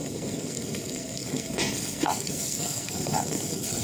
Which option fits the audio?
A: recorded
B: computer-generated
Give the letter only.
B